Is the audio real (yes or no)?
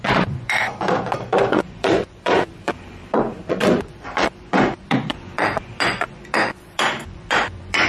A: no